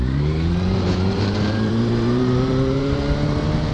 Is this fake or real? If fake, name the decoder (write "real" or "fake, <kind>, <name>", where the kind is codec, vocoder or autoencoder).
fake, vocoder, BigVGAN v2